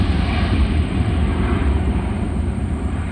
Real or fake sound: fake